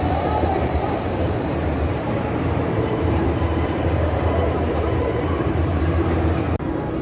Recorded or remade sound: remade